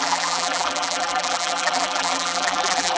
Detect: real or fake fake